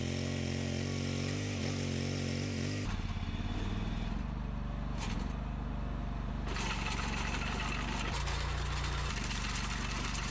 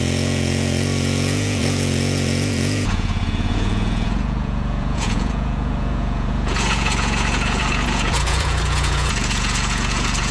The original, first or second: first